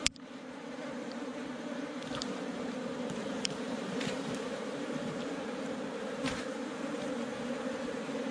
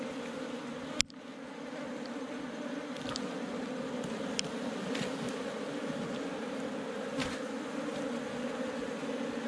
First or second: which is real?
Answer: second